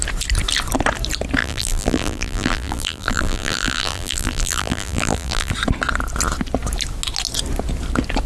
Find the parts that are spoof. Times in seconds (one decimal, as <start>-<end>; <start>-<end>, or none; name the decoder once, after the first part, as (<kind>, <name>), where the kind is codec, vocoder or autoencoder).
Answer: 1.4-5.5 (vocoder, BigVGAN v2)